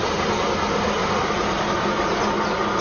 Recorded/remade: recorded